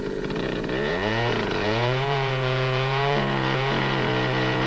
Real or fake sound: fake